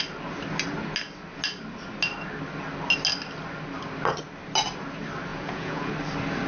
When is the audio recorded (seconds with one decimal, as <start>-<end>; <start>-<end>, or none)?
0.0-5.3; 5.9-6.5